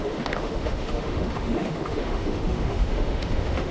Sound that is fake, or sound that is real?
fake